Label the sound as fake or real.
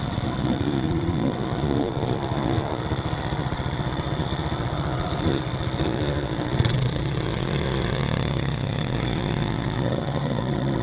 fake